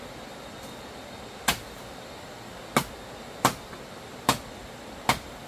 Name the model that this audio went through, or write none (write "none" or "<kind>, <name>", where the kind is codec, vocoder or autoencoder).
none